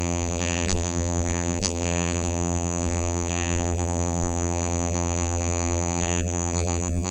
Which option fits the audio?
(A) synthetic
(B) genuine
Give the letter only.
A